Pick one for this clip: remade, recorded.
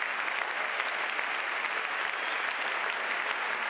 recorded